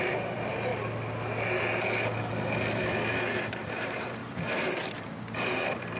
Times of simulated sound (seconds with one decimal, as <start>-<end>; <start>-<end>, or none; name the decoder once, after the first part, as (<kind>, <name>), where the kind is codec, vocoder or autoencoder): 0.0-0.7 (vocoder, BigVGAN v2); 3.4-6.0